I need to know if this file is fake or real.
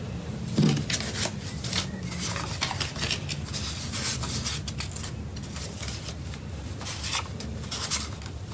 real